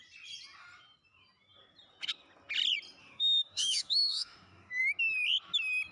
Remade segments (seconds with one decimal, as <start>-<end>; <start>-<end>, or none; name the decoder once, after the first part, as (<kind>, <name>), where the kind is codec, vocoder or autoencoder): 3.0-4.8 (autoencoder, DAC-VAE)